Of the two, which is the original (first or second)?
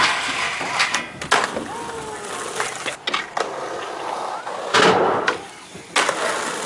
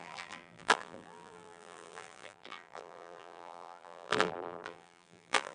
first